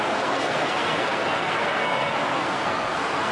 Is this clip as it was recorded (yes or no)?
no